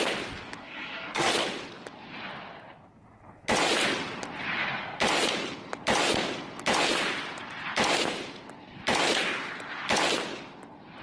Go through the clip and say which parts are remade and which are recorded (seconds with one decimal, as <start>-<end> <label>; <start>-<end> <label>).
0.0-0.6 recorded; 0.6-1.3 remade; 1.3-11.0 recorded